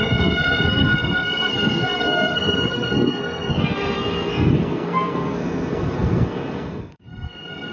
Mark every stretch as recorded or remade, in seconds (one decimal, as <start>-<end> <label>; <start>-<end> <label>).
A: 0.0-7.7 remade